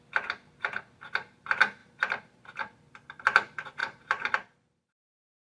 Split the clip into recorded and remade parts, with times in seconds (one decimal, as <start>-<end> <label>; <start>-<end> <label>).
0.0-1.8 recorded; 1.8-2.9 remade; 2.9-3.8 recorded; 3.8-5.5 remade